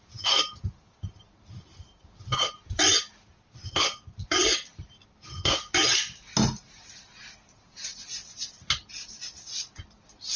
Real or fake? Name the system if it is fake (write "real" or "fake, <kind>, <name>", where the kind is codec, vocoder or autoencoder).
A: real